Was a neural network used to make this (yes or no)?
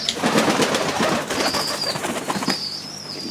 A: no